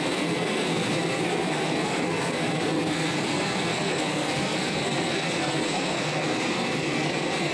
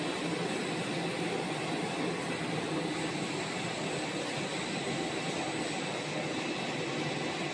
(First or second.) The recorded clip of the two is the second